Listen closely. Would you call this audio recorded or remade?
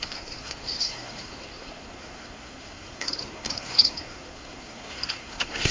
remade